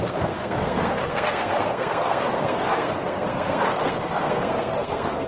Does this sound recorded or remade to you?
remade